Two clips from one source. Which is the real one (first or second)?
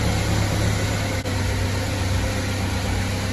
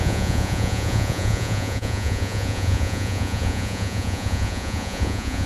first